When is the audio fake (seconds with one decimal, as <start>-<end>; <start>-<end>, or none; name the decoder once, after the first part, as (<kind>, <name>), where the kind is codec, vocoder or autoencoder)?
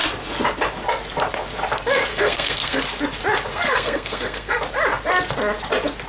2.1-2.8 (codec, SNAC); 3.5-4.6